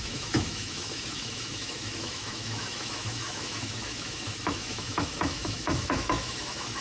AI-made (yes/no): yes